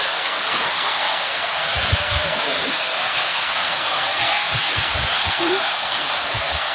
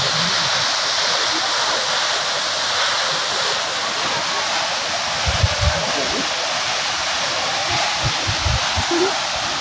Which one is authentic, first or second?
second